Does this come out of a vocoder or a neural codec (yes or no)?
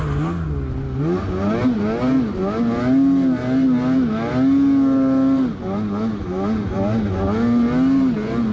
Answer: no